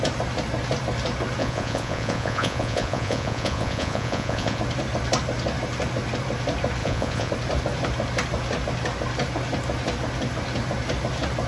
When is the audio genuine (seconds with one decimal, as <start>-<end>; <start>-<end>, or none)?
0.0-1.4; 4.6-6.8; 7.3-11.5